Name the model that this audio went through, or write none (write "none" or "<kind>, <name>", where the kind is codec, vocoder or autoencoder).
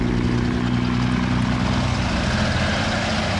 none